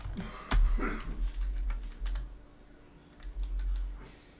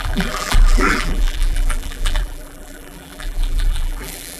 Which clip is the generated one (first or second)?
second